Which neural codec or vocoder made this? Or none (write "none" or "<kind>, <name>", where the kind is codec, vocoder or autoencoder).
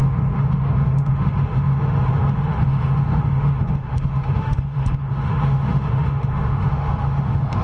autoencoder, DAC-VAE